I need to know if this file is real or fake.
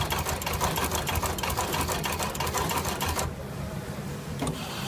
fake